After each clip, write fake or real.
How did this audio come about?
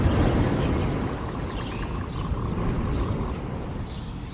real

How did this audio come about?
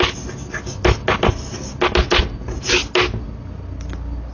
real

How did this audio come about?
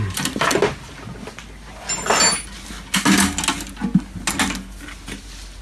real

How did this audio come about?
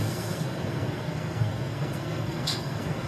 fake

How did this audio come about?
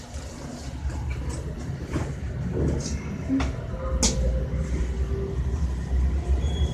real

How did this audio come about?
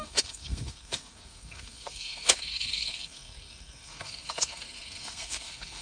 fake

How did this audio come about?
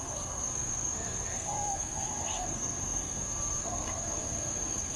fake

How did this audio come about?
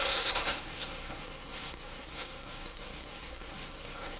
fake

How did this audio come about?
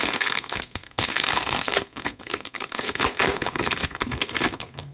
fake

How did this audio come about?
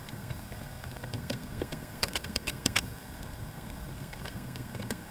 fake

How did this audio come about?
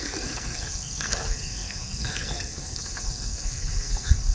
fake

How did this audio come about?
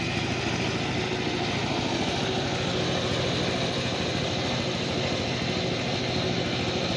real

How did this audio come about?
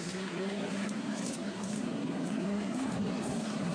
fake